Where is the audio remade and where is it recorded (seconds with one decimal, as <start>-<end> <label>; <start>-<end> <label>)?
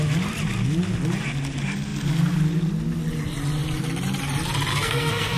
0.0-4.7 recorded; 4.7-5.4 remade